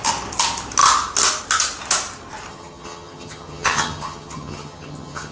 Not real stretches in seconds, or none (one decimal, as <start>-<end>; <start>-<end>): 2.5-5.3

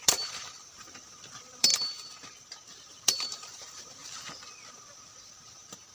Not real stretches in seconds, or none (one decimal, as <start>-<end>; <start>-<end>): 0.0-1.7; 2.9-4.0; 5.1-5.9

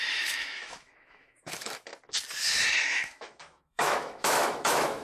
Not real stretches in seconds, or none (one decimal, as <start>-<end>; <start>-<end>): 0.0-1.9; 2.8-5.0

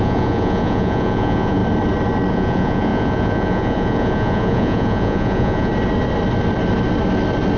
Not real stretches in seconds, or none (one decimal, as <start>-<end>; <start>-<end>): 0.0-1.6; 2.3-5.7

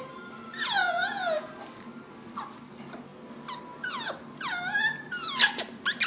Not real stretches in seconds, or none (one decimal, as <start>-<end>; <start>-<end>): 0.8-1.5

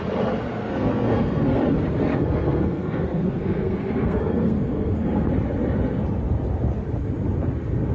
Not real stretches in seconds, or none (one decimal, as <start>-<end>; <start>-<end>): 0.5-1.6; 2.1-5.3